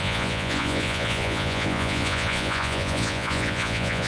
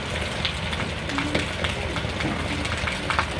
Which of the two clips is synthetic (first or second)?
first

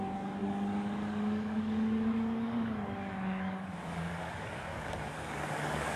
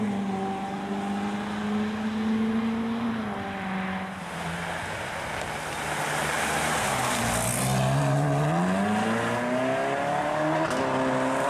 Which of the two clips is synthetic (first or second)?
first